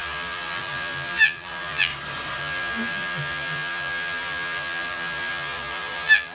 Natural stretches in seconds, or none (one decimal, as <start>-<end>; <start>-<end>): 1.9-2.4